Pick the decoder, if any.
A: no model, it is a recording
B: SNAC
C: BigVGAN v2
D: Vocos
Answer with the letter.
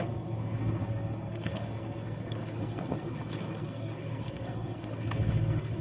B